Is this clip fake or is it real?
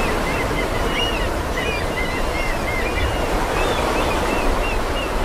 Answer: real